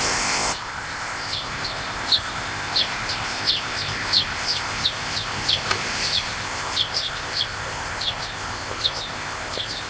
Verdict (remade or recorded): remade